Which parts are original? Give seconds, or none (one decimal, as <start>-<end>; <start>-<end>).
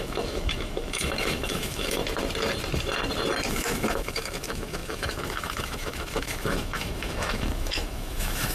2.0-3.5